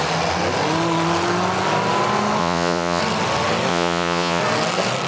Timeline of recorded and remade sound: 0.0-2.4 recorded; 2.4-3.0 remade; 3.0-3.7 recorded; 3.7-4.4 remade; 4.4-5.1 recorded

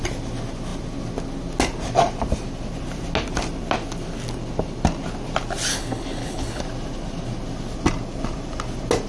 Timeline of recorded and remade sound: 0.0-5.7 recorded; 5.7-6.6 remade; 6.6-9.1 recorded

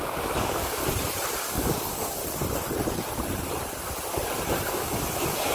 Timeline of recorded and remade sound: 0.0-0.8 remade; 0.8-1.4 recorded; 1.4-2.2 remade; 2.2-4.7 recorded; 4.7-5.5 remade

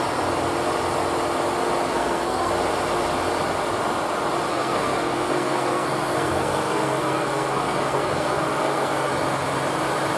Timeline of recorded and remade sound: 0.0-1.9 recorded; 1.9-2.5 remade; 2.5-4.5 recorded; 4.5-9.1 remade; 9.1-10.2 recorded

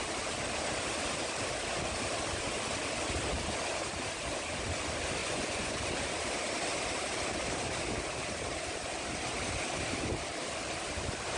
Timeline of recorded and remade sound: 0.0-5.2 recorded; 5.2-5.8 remade; 5.8-11.4 recorded

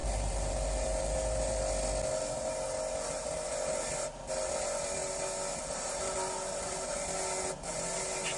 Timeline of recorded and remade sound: 0.0-1.6 remade; 1.6-8.4 recorded

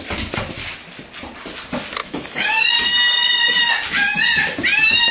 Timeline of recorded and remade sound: 0.0-2.0 recorded; 2.0-2.7 remade; 2.7-5.1 recorded

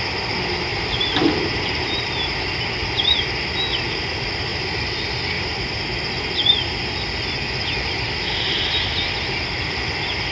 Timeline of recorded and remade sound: 0.0-0.7 recorded; 0.7-2.2 remade; 2.2-10.3 recorded